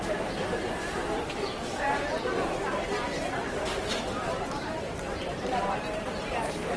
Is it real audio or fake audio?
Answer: fake